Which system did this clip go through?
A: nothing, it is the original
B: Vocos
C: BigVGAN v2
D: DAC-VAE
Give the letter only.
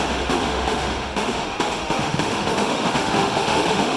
D